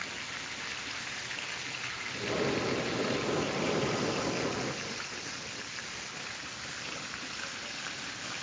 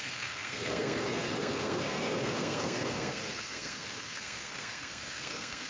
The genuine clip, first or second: first